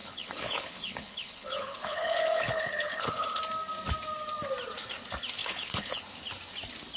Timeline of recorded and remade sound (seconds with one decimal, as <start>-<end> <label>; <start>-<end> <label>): 0.0-3.4 remade; 3.4-5.4 recorded; 5.4-6.0 remade; 6.0-7.0 recorded